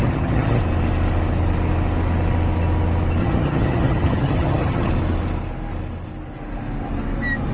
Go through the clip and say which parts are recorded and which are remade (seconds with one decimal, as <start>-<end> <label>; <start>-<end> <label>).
0.0-0.6 remade; 0.6-3.2 recorded; 3.2-4.9 remade; 4.9-7.5 recorded